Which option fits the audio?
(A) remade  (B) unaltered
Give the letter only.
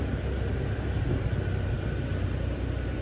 B